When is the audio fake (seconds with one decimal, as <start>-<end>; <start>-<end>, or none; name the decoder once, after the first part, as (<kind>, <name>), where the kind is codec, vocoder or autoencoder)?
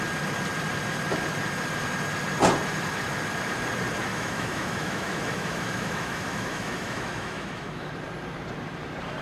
4.1-7.9 (autoencoder, DAC-VAE)